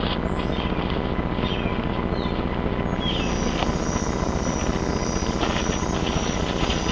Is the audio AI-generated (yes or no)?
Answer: no